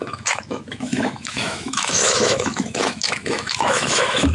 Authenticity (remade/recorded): remade